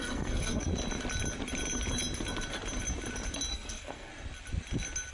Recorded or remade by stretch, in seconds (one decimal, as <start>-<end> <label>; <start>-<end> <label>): 0.0-0.7 remade; 0.7-3.5 recorded; 3.5-4.1 remade; 4.1-5.1 recorded